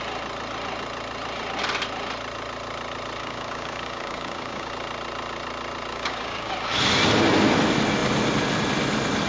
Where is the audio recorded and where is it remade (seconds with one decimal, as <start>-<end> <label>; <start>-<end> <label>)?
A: 0.0-3.2 recorded; 3.2-4.7 remade; 4.7-5.9 recorded; 5.9-6.5 remade; 6.5-9.3 recorded

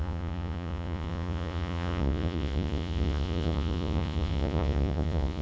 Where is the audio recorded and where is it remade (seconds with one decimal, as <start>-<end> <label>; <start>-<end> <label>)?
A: 0.0-5.4 remade

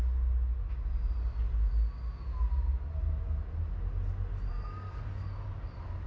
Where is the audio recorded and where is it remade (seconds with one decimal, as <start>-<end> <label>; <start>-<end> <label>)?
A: 0.0-4.5 recorded; 4.5-5.0 remade; 5.0-6.1 recorded